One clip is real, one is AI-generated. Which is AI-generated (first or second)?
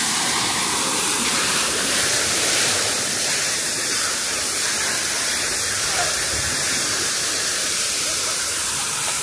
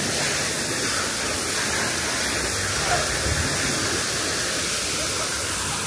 first